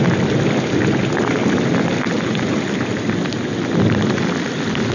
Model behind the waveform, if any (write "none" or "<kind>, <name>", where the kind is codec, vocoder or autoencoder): none